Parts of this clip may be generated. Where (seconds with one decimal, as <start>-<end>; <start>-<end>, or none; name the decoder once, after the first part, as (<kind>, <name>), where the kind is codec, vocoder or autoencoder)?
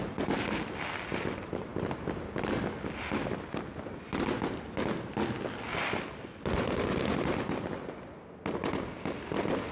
none